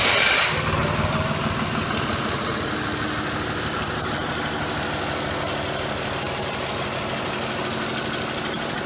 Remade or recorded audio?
recorded